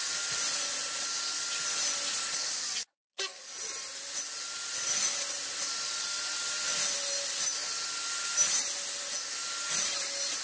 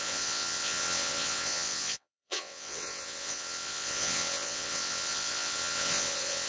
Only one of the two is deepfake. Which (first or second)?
second